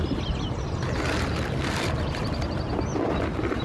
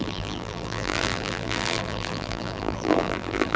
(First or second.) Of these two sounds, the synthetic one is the second